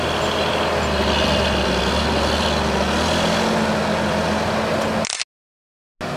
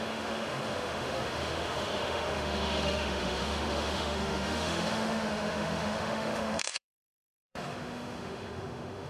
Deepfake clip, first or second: second